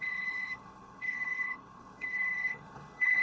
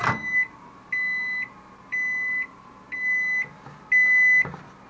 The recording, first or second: second